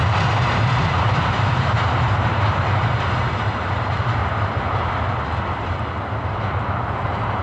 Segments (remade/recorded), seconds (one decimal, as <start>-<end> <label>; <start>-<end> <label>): 0.0-4.2 remade; 4.2-6.3 recorded; 6.3-7.4 remade